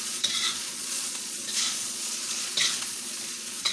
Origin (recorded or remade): remade